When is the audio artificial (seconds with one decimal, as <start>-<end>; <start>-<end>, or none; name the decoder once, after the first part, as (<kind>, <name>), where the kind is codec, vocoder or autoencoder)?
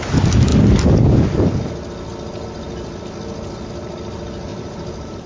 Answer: 4.5-5.3 (vocoder, BigVGAN v2)